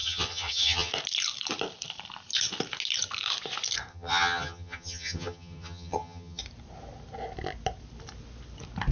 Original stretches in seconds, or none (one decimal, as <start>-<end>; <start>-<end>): 0.9-3.9; 6.4-8.9